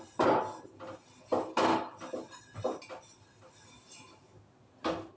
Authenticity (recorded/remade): recorded